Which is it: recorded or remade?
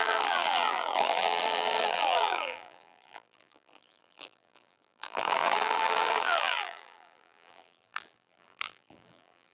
remade